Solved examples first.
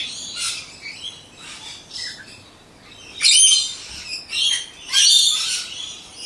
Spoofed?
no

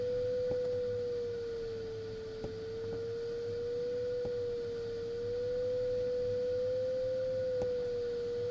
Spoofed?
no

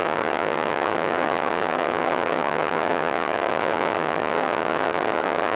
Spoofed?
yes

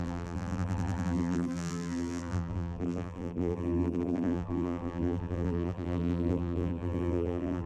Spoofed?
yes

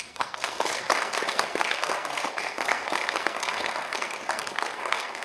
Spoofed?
yes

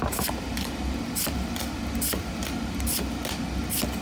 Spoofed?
no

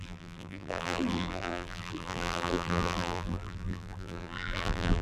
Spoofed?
yes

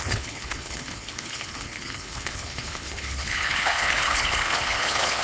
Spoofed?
yes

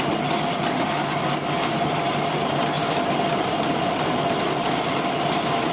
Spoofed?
no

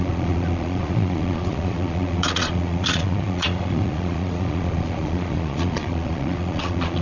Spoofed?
yes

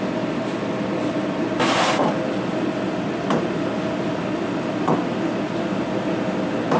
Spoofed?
no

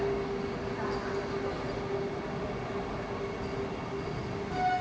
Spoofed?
no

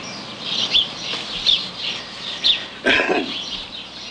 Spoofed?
no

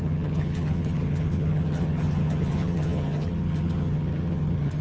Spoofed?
yes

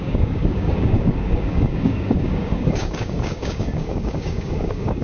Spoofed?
yes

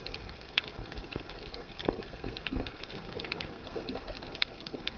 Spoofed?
yes